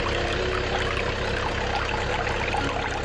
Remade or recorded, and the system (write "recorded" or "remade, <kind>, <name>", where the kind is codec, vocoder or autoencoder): recorded